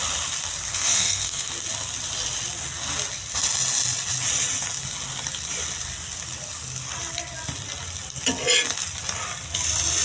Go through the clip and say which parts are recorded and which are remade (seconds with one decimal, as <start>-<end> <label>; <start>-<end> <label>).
0.0-0.7 recorded; 0.7-1.5 remade; 1.5-10.0 recorded